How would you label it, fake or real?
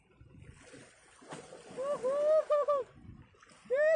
real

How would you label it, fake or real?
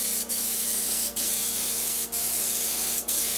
fake